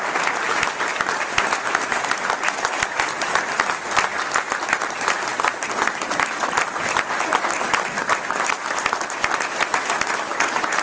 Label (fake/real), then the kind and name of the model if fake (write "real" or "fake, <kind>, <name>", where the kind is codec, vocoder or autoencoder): real